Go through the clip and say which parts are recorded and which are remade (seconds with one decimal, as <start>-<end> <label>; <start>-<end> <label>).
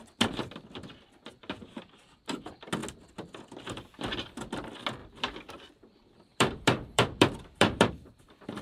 0.0-6.3 recorded; 6.3-8.1 remade; 8.1-8.6 recorded